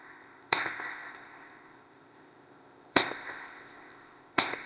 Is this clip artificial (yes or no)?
yes